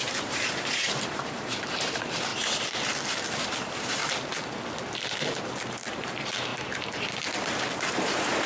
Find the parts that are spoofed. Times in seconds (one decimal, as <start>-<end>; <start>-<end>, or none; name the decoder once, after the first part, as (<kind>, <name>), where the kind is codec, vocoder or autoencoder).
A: 0.0-2.3 (vocoder, BigVGAN v2); 3.4-4.0; 6.0-6.5; 8.0-8.5